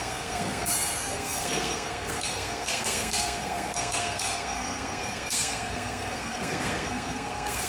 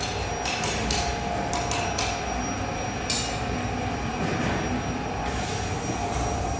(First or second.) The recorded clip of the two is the second